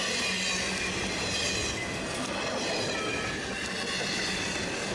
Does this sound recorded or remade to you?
recorded